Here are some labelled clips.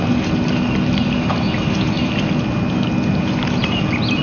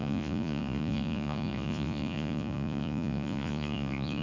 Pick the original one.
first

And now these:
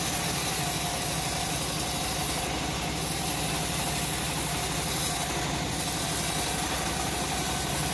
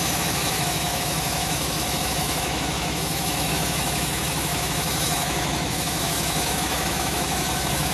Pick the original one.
first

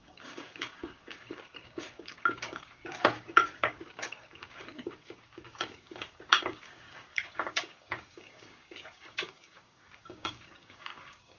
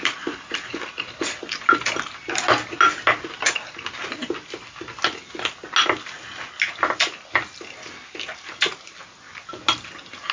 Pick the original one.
second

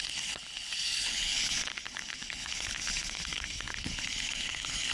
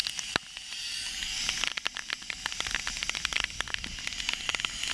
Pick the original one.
second